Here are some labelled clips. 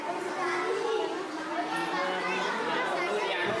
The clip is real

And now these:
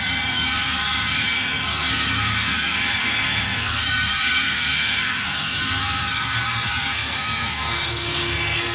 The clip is fake